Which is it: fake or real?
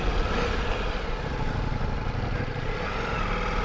real